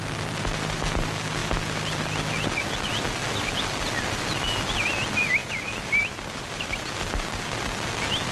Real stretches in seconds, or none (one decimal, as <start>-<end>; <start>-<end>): 0.0-5.4; 7.0-8.3